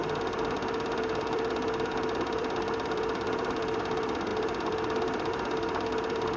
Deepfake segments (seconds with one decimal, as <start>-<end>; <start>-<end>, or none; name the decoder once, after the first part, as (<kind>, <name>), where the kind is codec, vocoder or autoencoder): 0.0-6.4 (vocoder, BigVGAN v2)